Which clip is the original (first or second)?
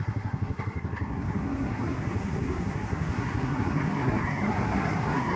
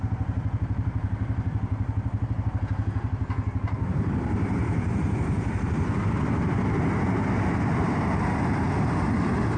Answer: second